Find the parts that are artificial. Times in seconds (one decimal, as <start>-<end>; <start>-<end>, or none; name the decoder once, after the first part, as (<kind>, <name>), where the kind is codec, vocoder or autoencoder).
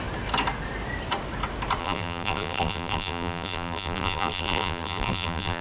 1.8-5.6 (vocoder, BigVGAN v2)